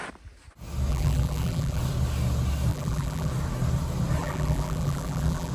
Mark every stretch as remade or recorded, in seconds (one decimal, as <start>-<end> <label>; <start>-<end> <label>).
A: 0.0-0.9 recorded; 0.9-1.8 remade; 1.8-2.7 recorded; 2.7-3.3 remade; 3.3-4.2 recorded; 4.2-5.5 remade